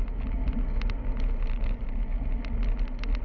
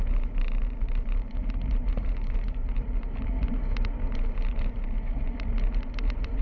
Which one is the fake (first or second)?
second